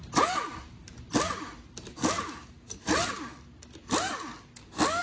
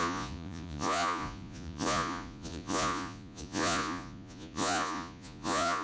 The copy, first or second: second